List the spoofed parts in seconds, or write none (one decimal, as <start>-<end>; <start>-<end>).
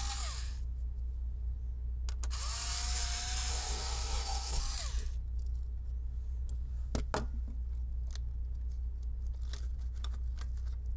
3.5-4.6